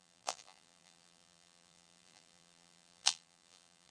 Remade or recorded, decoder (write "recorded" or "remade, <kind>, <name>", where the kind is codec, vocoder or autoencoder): remade, vocoder, BigVGAN v2